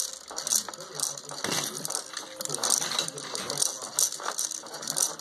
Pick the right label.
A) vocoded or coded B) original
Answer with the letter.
B